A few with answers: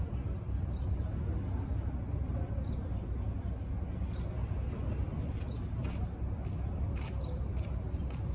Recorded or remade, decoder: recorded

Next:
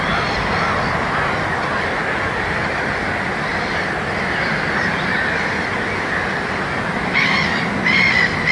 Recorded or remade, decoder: recorded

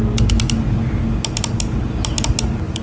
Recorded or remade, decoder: recorded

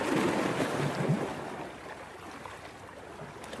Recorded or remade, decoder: recorded